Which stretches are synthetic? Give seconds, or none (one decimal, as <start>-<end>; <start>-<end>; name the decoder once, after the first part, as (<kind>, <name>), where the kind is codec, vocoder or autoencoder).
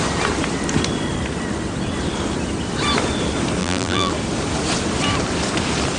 3.6-4.1 (vocoder, BigVGAN v2)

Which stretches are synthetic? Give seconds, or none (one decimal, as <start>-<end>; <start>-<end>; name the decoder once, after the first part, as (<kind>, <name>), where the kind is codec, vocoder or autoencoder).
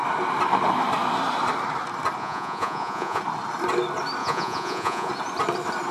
2.2-3.2 (vocoder, Vocos); 4.2-5.1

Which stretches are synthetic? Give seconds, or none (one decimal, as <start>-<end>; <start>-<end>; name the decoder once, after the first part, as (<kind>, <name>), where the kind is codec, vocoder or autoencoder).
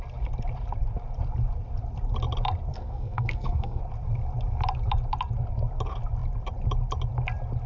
2.7-3.8 (codec, SNAC)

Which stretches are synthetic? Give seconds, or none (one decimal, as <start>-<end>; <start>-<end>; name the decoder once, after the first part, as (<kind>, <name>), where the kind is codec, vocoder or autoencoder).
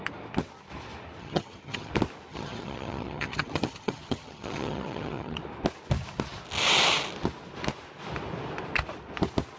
1.2-1.9 (vocoder, HiFi-GAN); 2.3-5.4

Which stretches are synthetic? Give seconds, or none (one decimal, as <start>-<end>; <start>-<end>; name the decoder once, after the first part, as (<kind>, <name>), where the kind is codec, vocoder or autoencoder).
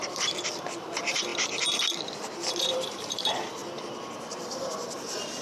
0.0-1.3 (vocoder, BigVGAN v2); 2.6-3.6; 4.2-5.4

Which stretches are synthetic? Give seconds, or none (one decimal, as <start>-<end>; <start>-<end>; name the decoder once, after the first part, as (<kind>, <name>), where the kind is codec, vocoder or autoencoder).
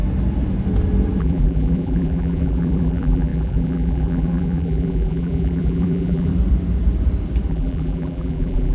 1.2-6.3 (vocoder, BigVGAN v2); 7.5-8.7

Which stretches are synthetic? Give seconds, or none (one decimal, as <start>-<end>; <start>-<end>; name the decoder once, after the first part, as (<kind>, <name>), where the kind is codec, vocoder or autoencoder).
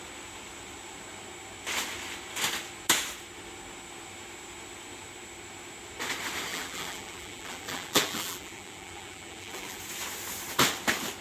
6.5-9.8 (vocoder, BigVGAN v2)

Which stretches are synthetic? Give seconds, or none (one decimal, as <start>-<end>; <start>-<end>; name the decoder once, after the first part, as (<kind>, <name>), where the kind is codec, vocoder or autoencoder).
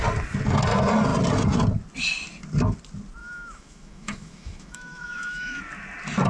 3.2-5.6 (autoencoder, DAC-VAE)